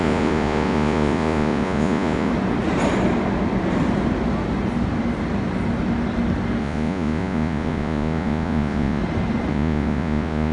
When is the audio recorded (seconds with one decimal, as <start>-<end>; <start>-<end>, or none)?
2.3-6.6; 9.0-9.5